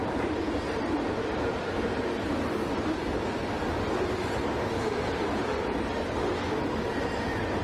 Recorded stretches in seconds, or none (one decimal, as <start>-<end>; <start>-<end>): 0.0-7.6